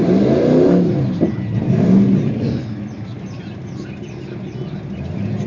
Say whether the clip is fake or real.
real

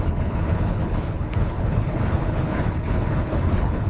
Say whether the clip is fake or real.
fake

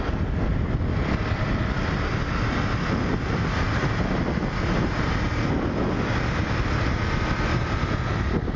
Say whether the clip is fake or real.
real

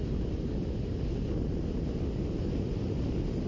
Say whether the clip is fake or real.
real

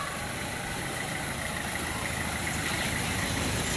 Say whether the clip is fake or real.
real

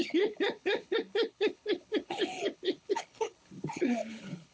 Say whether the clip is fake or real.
fake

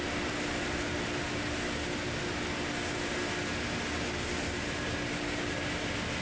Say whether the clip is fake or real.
real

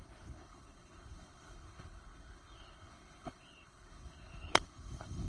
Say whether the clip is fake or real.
fake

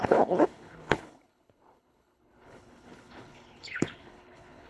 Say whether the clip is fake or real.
fake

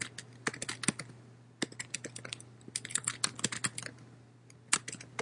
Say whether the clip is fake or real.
real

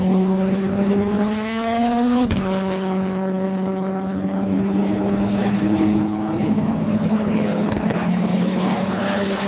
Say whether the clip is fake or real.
fake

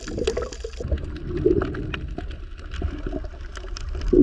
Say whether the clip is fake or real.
real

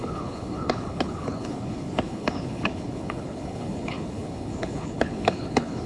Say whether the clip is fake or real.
fake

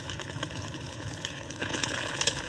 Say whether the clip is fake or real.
fake